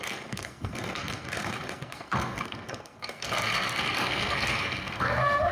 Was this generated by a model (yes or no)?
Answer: yes